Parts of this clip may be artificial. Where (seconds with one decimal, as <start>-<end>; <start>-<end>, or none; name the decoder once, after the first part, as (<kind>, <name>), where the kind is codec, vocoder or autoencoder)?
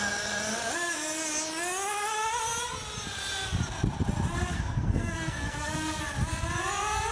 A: 4.5-6.0 (codec, SNAC)